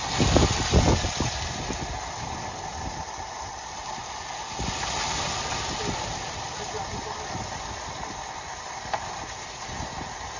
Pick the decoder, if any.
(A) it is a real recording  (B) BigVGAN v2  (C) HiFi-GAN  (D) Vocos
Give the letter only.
A